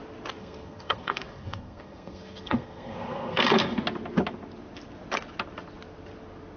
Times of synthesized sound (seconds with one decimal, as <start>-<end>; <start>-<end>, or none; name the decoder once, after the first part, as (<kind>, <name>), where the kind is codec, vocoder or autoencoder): 0.4-3.8 (codec, SNAC)